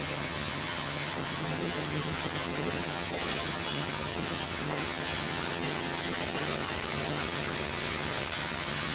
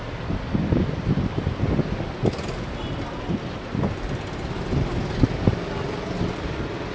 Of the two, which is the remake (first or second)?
first